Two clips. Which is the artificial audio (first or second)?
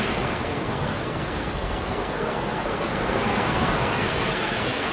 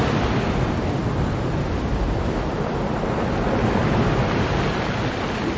first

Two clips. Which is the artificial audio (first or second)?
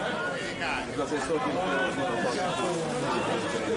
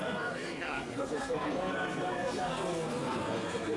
second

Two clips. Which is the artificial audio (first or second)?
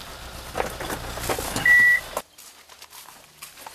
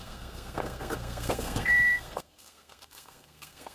second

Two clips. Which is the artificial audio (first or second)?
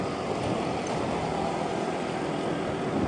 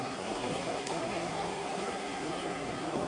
second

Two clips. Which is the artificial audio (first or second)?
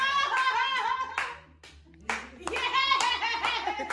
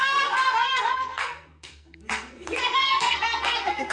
second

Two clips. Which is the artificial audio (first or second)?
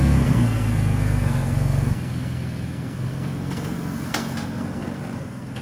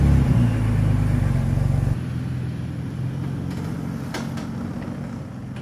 first